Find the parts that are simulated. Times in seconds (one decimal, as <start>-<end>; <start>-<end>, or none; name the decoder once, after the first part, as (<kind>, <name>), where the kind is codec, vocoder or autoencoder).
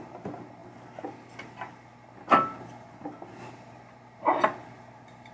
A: none